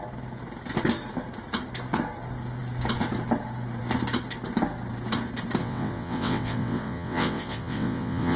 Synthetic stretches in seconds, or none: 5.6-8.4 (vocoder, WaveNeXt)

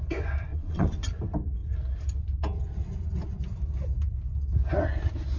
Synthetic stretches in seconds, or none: 0.5-1.0 (vocoder, WaveNeXt)